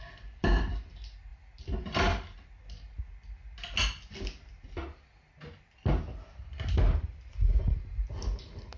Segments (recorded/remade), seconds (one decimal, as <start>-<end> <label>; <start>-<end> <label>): 0.0-8.8 recorded